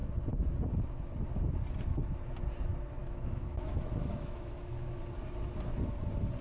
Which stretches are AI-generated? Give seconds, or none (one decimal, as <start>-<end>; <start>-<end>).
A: 3.0-5.0